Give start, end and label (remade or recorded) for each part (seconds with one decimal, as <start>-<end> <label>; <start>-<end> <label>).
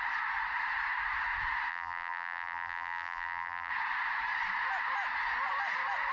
0.0-1.7 recorded; 1.7-3.7 remade; 3.7-6.1 recorded